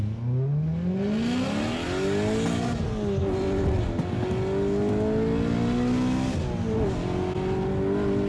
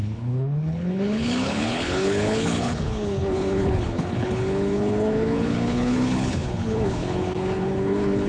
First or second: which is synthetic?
second